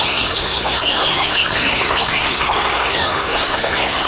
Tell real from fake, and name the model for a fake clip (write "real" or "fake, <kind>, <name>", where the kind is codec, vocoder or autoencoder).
fake, codec, SNAC